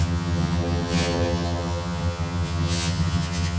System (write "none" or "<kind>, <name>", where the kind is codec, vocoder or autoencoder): vocoder, HiFi-GAN